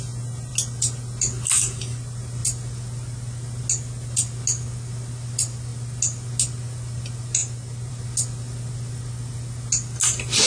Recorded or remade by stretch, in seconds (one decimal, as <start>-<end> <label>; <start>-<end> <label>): 0.0-10.5 recorded